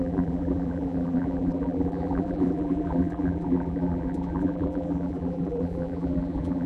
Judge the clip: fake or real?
fake